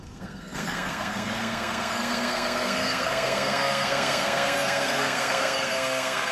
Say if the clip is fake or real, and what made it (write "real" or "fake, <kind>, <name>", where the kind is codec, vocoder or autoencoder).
fake, codec, SNAC